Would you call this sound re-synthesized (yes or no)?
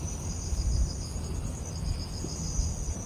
no